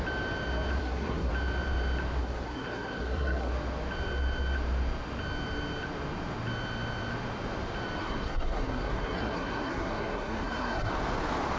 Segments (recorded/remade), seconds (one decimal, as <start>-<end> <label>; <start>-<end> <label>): 0.0-0.8 recorded; 0.8-1.3 remade; 1.3-2.2 recorded; 2.2-3.5 remade; 3.5-8.0 recorded; 8.0-10.9 remade; 10.9-11.6 recorded